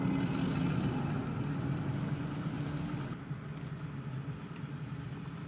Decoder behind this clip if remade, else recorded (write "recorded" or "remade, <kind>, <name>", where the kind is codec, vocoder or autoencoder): remade, vocoder, BigVGAN v2